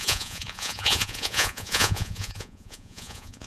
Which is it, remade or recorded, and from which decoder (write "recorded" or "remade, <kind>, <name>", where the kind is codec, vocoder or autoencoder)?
remade, vocoder, Vocos